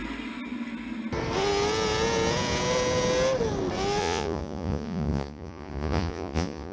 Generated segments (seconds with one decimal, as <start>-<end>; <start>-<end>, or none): 4.0-6.7